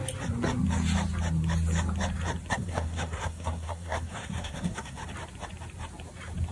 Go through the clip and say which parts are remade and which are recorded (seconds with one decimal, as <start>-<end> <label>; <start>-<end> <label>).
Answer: 0.0-2.5 recorded; 2.5-5.0 remade; 5.0-6.5 recorded